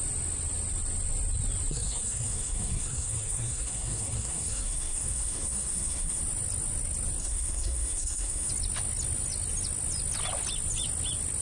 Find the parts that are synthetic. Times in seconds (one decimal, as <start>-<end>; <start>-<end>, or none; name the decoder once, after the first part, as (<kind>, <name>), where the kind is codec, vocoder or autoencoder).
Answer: 1.7-6.2 (codec, SNAC); 7.2-8.5